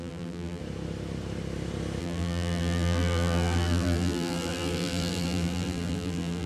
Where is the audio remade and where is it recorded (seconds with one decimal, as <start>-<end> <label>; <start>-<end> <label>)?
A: 0.0-0.6 remade; 0.6-2.0 recorded; 2.0-6.5 remade